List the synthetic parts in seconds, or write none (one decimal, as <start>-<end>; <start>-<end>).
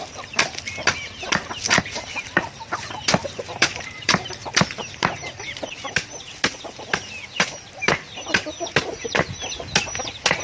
3.2-5.6